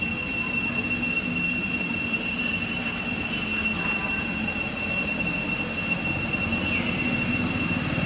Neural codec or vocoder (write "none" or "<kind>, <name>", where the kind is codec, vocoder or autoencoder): none